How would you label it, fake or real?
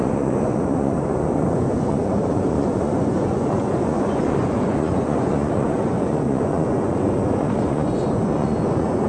fake